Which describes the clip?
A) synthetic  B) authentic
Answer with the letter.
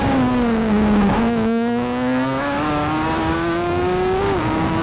A